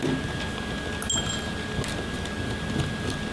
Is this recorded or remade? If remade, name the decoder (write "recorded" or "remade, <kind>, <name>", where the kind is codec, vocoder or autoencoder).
recorded